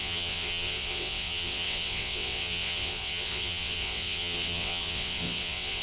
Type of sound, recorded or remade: remade